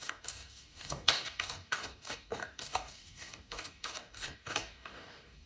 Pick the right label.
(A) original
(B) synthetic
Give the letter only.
B